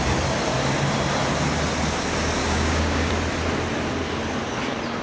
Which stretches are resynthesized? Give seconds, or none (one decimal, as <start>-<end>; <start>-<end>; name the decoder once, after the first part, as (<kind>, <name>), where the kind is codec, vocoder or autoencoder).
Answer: 2.4-3.1 (codec, DAC)